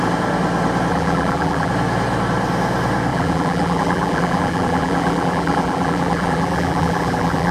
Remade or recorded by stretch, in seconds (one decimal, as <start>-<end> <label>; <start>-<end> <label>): 0.0-0.9 recorded; 0.9-1.7 remade; 1.7-3.1 recorded; 3.1-7.5 remade